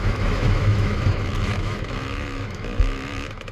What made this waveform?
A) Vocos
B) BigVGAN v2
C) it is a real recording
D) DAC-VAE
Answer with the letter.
D